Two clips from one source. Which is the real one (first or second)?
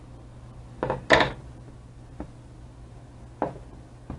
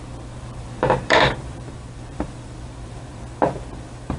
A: first